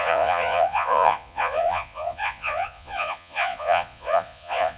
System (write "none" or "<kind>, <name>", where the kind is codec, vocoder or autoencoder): vocoder, Vocos